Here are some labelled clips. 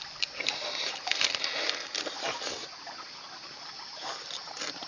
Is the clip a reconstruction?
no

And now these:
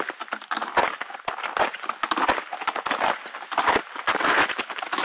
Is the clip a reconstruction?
no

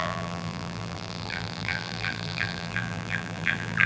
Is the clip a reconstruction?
yes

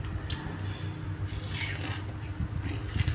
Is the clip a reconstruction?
no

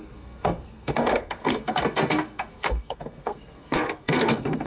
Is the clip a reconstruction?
yes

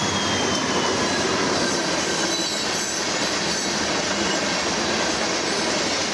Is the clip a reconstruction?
no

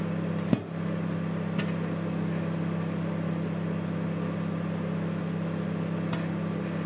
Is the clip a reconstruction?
no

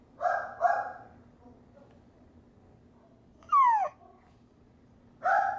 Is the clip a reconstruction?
no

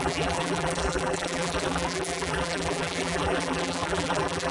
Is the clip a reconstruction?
yes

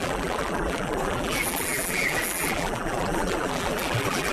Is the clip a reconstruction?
yes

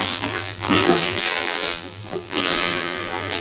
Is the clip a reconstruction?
yes